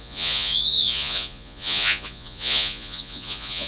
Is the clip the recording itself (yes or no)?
no